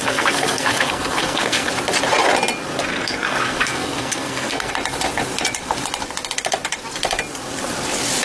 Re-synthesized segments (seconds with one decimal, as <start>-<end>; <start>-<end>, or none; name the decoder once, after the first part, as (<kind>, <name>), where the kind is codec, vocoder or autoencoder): 0.0-1.7 (codec, SNAC); 2.9-4.7